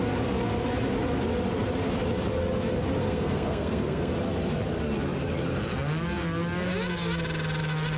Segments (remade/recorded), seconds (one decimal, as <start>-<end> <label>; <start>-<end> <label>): 0.0-3.0 recorded; 3.0-4.1 remade; 4.1-8.0 recorded